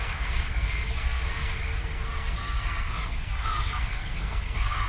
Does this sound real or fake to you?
fake